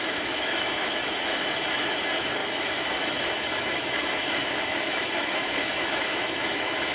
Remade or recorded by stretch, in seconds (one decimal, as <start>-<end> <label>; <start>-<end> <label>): 0.0-6.9 remade